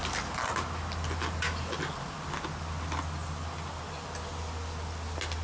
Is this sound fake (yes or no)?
no